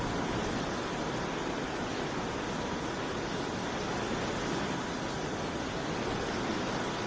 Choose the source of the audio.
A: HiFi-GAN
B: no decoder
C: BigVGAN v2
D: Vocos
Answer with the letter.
B